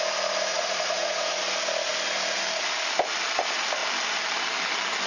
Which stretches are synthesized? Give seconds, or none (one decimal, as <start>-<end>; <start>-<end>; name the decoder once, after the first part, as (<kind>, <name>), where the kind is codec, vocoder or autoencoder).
0.5-1.4 (vocoder, Vocos)